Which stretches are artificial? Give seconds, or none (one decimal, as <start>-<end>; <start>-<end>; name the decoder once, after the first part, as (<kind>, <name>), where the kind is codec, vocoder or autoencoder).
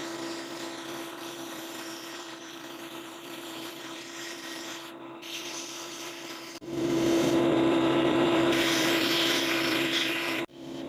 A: 1.2-4.7 (vocoder, BigVGAN v2); 5.4-10.9